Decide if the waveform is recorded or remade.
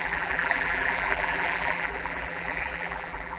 remade